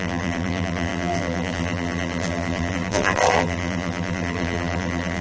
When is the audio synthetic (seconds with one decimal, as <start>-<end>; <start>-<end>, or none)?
0.0-5.2